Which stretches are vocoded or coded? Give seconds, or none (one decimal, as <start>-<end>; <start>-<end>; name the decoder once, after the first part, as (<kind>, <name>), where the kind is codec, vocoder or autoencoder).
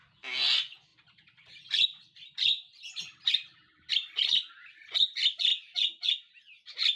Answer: 0.9-3.9 (vocoder, BigVGAN v2)